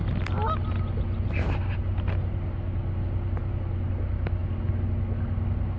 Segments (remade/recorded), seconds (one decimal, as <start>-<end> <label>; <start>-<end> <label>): 0.0-5.8 recorded